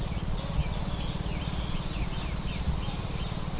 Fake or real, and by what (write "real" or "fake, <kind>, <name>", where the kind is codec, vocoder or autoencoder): real